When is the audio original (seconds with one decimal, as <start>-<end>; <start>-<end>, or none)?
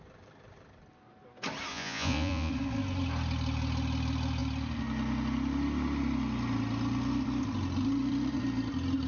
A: 0.0-1.7; 2.5-9.1